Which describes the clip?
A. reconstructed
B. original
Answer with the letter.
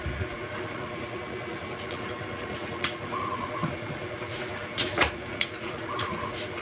A